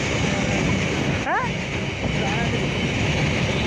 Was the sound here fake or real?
real